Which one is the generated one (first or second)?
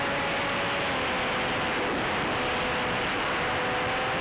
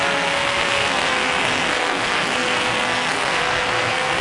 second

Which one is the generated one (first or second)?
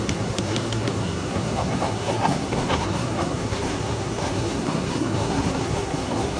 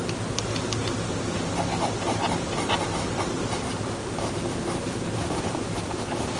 first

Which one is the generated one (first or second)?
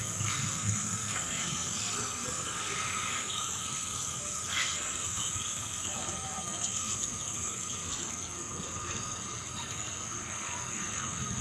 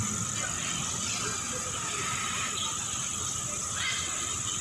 first